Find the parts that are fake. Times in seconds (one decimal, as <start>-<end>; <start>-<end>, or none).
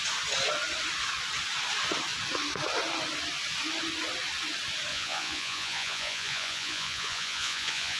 4.9-8.0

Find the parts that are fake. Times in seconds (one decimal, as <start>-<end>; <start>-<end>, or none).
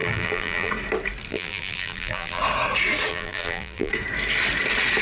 0.0-0.7; 1.3-2.4; 3.1-3.9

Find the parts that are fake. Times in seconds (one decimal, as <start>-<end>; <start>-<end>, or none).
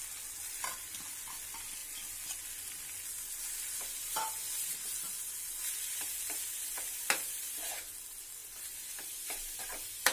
none